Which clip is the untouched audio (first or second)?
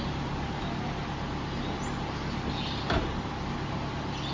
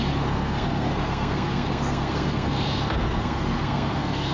first